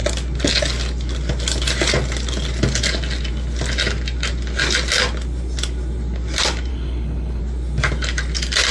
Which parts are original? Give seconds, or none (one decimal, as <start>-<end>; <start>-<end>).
0.0-6.7; 7.4-8.7